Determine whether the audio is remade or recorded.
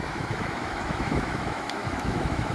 remade